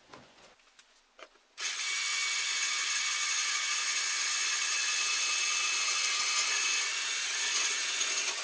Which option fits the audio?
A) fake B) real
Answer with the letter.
A